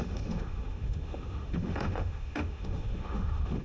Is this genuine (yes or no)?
no